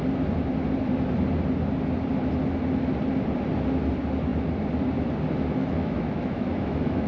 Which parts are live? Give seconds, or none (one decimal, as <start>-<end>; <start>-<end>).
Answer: 0.0-5.6